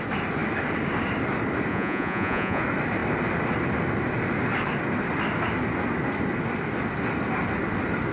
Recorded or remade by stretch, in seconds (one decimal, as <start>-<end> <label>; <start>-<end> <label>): 0.0-1.7 recorded; 1.7-2.6 remade; 2.6-8.1 recorded